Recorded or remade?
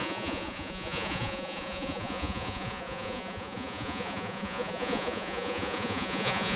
remade